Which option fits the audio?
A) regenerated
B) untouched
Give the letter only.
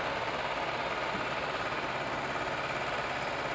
B